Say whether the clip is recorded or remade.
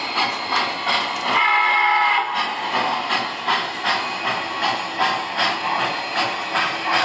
recorded